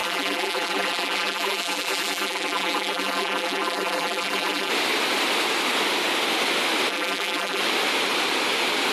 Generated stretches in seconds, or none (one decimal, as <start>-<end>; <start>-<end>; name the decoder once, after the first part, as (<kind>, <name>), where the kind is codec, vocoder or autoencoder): 0.0-4.7 (vocoder, BigVGAN v2); 6.9-7.6